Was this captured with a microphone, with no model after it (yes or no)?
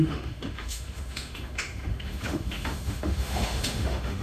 no